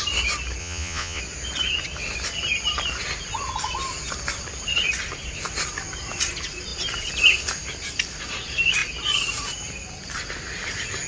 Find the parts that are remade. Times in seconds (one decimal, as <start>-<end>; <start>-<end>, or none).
0.6-1.2